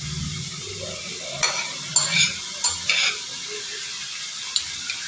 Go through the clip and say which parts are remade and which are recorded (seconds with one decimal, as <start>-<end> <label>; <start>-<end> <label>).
0.0-5.1 recorded